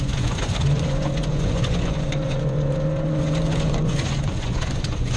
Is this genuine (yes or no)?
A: no